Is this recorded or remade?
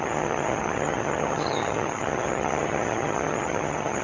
remade